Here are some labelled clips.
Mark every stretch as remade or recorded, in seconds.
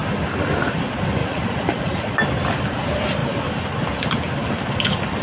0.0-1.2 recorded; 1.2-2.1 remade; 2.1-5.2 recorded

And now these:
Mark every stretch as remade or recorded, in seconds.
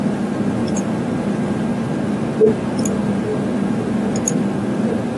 0.0-5.2 recorded